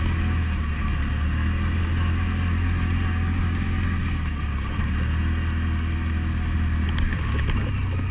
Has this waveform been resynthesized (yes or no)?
no